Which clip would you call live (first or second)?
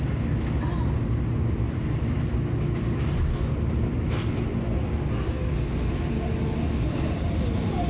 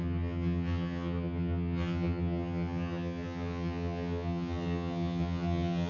first